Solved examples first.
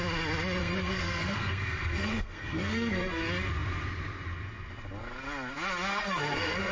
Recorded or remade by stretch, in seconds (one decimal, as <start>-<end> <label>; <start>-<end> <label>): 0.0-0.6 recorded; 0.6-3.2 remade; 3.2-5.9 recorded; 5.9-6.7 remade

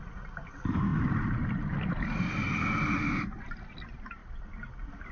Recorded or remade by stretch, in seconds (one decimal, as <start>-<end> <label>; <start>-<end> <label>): 0.0-5.1 recorded

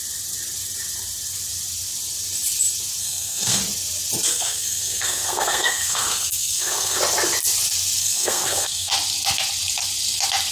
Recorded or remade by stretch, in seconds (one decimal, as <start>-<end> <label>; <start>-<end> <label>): 0.0-3.0 recorded; 3.0-3.6 remade; 3.6-4.3 recorded; 4.3-7.0 remade; 7.0-8.0 recorded; 8.0-8.9 remade; 8.9-10.5 recorded

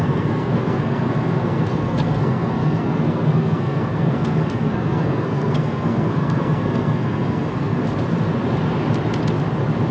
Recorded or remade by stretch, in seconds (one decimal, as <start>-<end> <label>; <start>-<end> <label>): 0.0-7.8 remade; 7.8-9.9 recorded

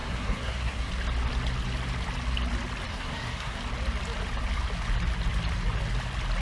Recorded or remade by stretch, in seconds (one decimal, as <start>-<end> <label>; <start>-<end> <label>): 0.0-0.9 remade; 0.9-2.9 recorded; 2.9-3.6 remade; 3.6-6.4 recorded